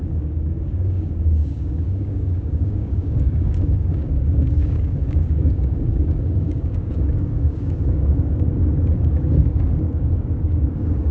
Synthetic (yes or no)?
yes